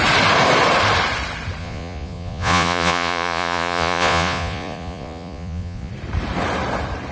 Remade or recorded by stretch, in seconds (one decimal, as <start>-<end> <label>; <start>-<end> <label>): 0.0-1.6 recorded; 1.6-5.9 remade; 5.9-7.1 recorded

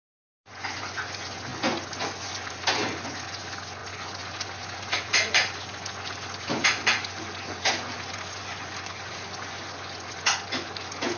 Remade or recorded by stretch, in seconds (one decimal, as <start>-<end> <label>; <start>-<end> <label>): 0.0-11.2 remade

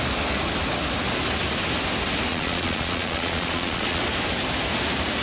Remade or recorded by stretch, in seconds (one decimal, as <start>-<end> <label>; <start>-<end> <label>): 0.0-2.3 recorded; 2.3-4.0 remade; 4.0-5.2 recorded

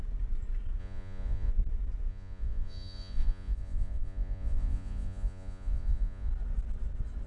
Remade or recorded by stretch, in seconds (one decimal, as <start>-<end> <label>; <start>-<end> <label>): 0.0-0.8 recorded; 0.8-1.5 remade; 1.5-2.1 recorded; 2.1-6.3 remade; 6.3-7.3 recorded

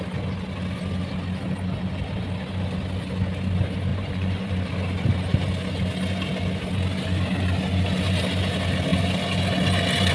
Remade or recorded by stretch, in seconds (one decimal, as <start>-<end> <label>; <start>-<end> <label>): 0.0-3.9 recorded; 3.9-4.5 remade; 4.5-10.1 recorded